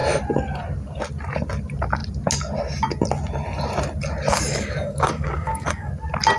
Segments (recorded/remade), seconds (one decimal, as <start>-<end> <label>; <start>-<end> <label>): 0.0-4.3 recorded; 4.3-5.9 remade; 5.9-6.4 recorded